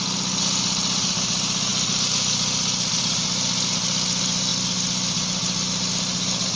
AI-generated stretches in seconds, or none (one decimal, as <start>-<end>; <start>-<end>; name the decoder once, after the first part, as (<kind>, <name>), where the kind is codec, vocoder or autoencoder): none